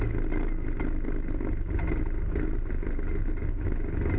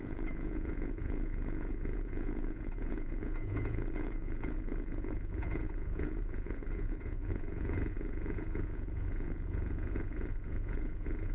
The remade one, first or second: second